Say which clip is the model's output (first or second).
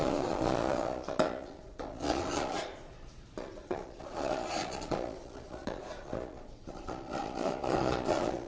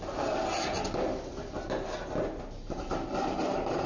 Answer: first